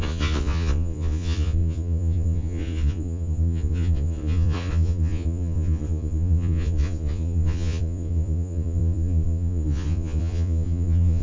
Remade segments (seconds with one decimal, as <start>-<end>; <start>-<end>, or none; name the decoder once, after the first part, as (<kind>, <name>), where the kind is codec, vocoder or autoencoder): 0.0-11.2 (vocoder, Vocos)